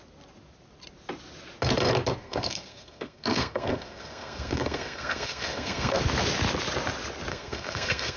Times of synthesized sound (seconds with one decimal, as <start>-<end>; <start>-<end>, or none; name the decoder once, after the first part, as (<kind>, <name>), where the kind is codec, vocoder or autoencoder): 2.2-6.0 (codec, SNAC); 7.3-8.2